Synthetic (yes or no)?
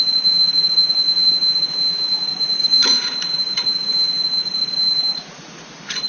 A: yes